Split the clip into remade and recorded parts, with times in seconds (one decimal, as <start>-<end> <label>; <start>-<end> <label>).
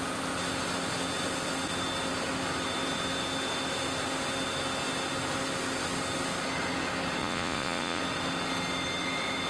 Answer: 0.0-7.2 recorded; 7.2-8.0 remade; 8.0-9.5 recorded